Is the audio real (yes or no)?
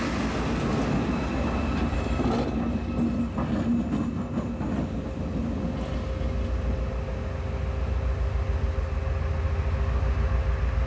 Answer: yes